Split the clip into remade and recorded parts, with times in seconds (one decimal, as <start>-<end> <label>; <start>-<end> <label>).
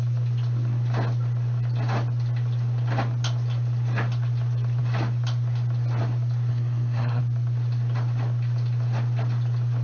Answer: 0.0-6.5 recorded; 6.5-7.2 remade; 7.2-9.8 recorded